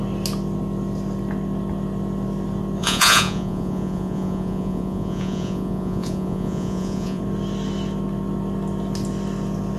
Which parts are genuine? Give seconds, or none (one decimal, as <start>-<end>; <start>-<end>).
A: 0.0-2.8; 7.2-9.8